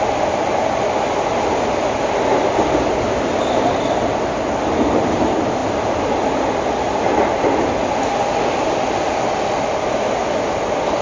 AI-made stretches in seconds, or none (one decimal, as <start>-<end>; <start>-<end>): none